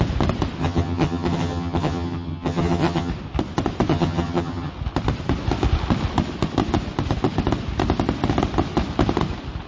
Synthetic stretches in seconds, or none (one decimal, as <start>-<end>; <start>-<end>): 0.6-3.1; 3.9-4.7